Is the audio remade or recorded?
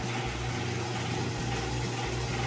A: recorded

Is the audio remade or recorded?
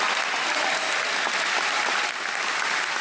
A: recorded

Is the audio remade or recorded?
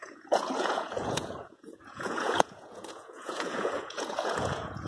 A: remade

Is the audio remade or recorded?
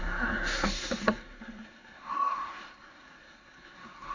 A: remade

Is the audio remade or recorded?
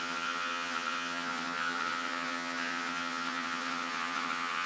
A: remade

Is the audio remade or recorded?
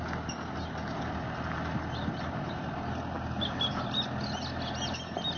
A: recorded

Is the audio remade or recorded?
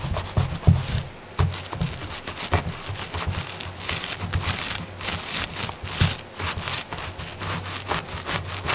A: recorded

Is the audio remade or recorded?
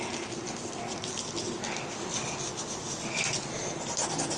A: recorded